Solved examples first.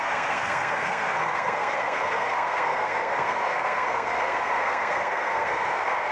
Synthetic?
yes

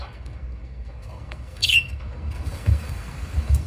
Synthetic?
yes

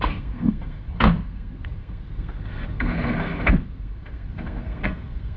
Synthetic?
yes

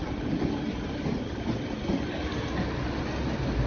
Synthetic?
no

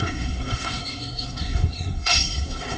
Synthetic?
yes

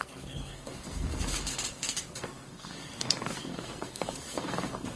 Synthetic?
yes